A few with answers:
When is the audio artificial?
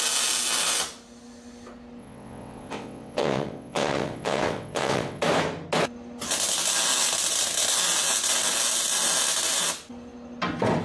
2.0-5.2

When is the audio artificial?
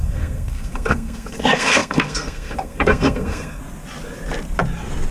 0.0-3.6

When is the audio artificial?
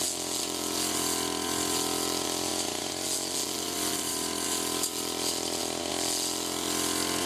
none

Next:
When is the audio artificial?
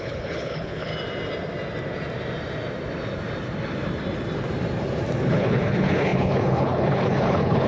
0.0-0.9; 5.3-7.7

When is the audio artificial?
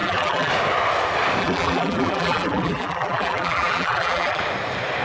0.0-0.5; 1.4-4.4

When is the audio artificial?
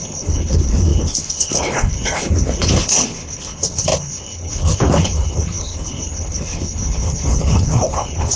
0.0-8.4